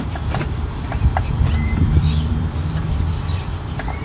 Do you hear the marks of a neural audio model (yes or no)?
yes